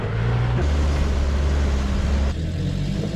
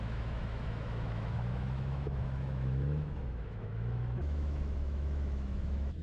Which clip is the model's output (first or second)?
second